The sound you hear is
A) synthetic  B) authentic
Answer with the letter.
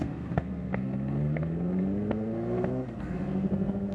A